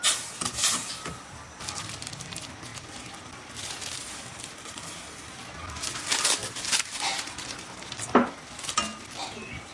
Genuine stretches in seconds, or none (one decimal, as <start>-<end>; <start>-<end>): 0.0-9.7